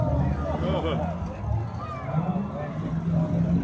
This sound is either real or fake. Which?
real